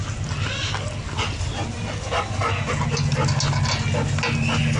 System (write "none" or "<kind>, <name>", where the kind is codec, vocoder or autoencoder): none